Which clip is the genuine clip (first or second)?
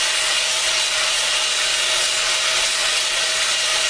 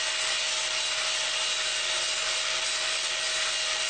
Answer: second